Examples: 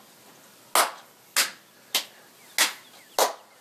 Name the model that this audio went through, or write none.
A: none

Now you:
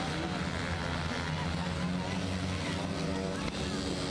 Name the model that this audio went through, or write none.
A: none